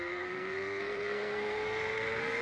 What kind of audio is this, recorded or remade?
remade